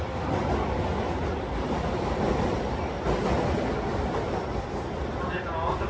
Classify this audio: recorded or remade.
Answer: recorded